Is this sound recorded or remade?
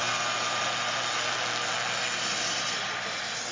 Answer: recorded